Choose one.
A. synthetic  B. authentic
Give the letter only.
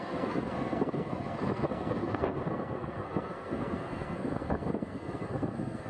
A